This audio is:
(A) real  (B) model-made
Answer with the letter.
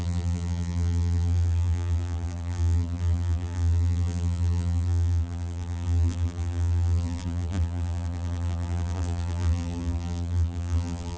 B